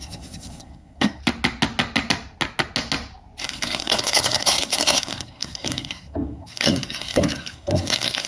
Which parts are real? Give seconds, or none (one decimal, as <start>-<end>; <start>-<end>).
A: 1.2-3.4